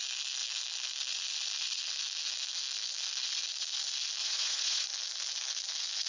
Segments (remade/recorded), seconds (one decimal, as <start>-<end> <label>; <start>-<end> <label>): 0.0-4.2 recorded; 4.2-4.9 remade; 4.9-6.1 recorded